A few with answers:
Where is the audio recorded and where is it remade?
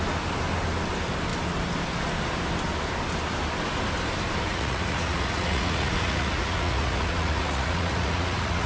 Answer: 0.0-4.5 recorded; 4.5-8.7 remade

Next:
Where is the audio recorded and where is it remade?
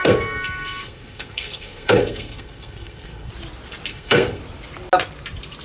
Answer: 0.0-3.3 remade; 3.3-3.9 recorded; 3.9-4.4 remade; 4.4-5.6 recorded